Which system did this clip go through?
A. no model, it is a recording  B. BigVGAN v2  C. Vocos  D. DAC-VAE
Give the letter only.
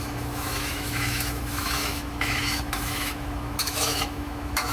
D